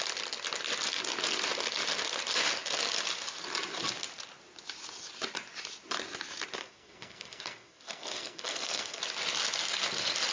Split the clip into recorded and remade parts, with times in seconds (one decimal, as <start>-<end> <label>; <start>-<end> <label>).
0.0-6.6 recorded; 6.6-9.0 remade; 9.0-10.3 recorded